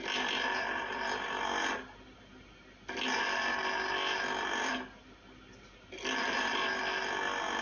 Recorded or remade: recorded